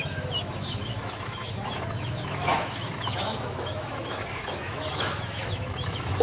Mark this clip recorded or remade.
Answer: remade